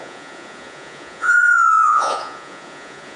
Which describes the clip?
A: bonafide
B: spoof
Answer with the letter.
B